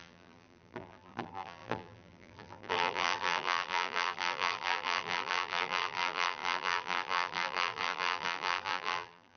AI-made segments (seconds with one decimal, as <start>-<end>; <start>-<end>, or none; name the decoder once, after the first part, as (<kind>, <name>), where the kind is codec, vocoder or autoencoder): 0.0-9.4 (vocoder, BigVGAN v2)